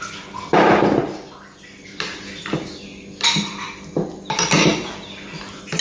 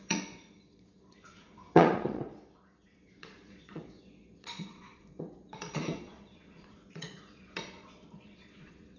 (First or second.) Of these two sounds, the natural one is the first